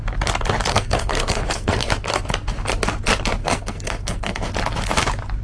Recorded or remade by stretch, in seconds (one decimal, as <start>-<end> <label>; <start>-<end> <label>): 0.0-0.7 recorded; 0.7-1.9 remade; 1.9-3.4 recorded; 3.4-4.5 remade; 4.5-5.4 recorded